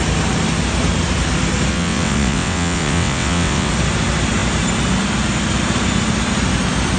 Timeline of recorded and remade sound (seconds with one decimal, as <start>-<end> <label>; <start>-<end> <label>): 0.0-1.7 recorded; 1.7-3.7 remade; 3.7-7.0 recorded